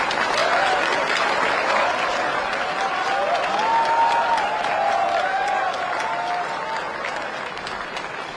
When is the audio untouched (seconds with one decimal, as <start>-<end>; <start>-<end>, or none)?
0.0-8.4